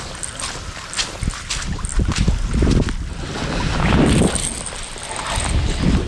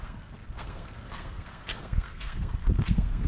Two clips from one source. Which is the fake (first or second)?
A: second